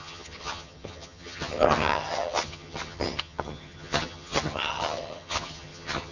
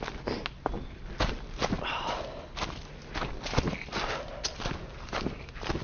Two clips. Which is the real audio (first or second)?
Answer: second